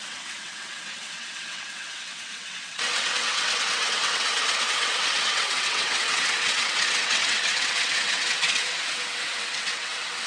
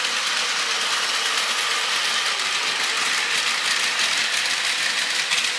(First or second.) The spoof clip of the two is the first